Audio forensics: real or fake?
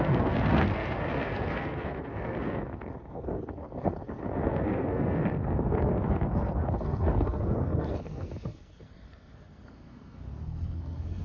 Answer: fake